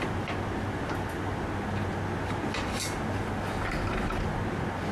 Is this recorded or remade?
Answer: recorded